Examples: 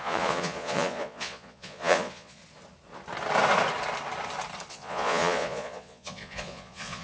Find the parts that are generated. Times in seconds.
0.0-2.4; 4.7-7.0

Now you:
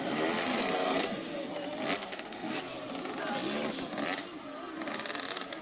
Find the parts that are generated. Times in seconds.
0.4-1.5; 2.0-2.6

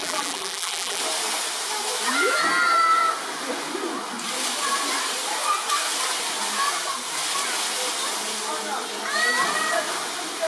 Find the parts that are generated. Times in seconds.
0.0-1.0

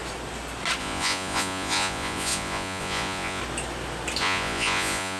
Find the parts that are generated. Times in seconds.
0.8-3.4; 4.2-5.2

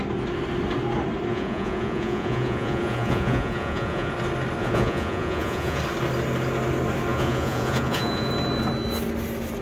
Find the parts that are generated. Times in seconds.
1.3-4.1; 4.6-5.8; 7.1-8.3

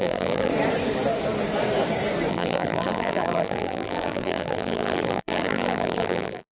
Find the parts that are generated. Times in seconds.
0.0-0.5; 2.3-6.5